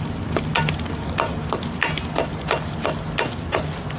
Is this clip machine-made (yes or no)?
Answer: no